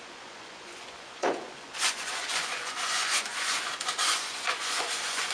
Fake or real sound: fake